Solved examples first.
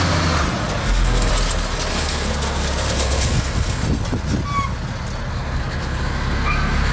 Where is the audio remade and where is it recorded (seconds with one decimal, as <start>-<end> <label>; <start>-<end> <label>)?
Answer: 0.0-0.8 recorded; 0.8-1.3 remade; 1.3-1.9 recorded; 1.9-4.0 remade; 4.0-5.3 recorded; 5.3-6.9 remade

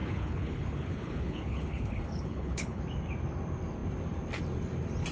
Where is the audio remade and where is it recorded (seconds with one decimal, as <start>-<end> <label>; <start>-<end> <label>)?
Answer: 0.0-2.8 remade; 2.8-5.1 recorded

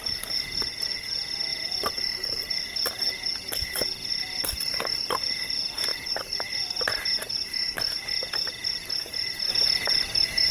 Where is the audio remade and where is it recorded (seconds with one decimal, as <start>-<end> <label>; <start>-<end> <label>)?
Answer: 0.0-1.5 recorded; 1.5-3.1 remade; 3.1-5.9 recorded; 5.9-6.5 remade; 6.5-10.5 recorded

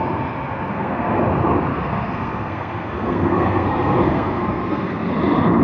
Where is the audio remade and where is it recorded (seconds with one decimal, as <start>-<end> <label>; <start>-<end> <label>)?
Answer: 0.0-0.7 recorded; 0.7-1.2 remade; 1.2-1.7 recorded; 1.7-5.1 remade; 5.1-5.6 recorded

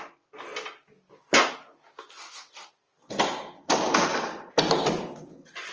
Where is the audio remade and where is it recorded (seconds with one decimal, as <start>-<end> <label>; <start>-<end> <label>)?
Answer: 0.0-5.7 recorded